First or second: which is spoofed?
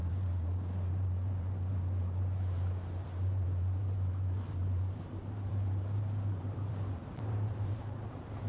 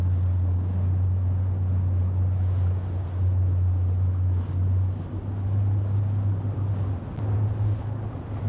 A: first